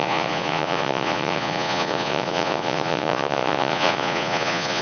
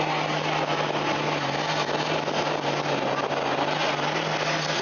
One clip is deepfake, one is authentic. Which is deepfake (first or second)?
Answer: first